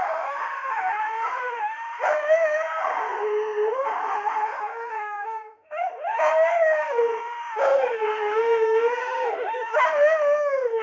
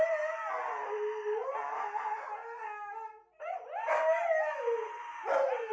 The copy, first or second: first